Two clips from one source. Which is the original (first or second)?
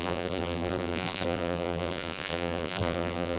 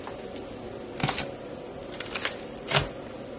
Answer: second